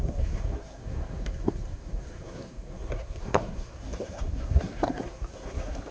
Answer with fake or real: fake